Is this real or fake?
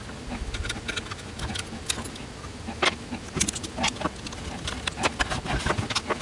real